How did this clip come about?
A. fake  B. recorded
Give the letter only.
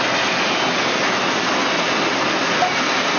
B